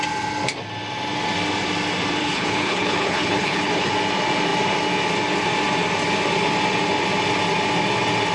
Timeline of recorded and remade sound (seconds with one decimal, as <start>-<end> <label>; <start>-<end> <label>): 0.0-2.2 recorded; 2.2-3.9 remade; 3.9-8.3 recorded